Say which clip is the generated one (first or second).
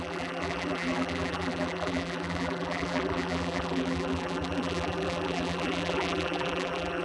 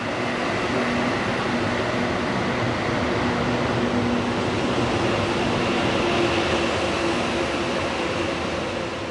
first